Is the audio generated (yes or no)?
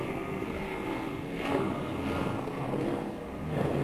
yes